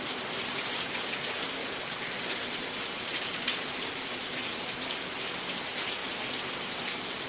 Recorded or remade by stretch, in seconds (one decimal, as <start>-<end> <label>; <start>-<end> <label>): 0.0-1.6 recorded; 1.6-5.0 remade; 5.0-7.3 recorded